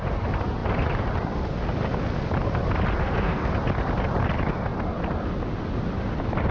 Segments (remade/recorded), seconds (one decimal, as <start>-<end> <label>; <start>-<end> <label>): 0.0-3.0 recorded; 3.0-3.5 remade; 3.5-6.5 recorded